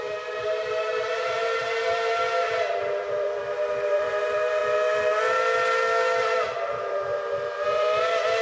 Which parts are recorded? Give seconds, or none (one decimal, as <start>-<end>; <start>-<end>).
4.6-6.2